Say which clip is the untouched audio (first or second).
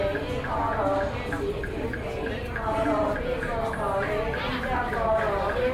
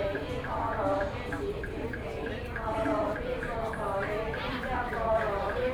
first